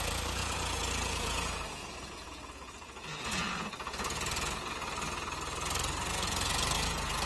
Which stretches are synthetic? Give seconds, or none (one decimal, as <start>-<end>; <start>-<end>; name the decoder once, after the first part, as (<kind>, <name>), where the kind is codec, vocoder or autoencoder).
0.0-4.8 (vocoder, Vocos); 6.1-7.3